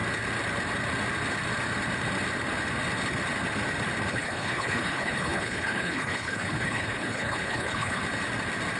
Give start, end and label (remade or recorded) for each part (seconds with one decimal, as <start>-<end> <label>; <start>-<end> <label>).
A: 0.0-4.1 recorded; 4.1-8.0 remade; 8.0-8.8 recorded